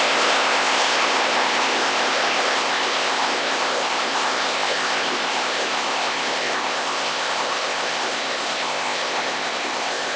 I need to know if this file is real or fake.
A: fake